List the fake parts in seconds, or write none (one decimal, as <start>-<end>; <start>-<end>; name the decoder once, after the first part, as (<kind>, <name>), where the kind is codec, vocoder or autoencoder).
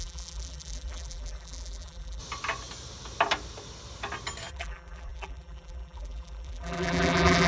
0.0-2.2 (vocoder, BigVGAN v2); 4.5-7.5